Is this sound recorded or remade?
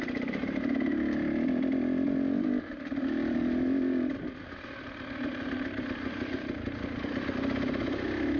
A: recorded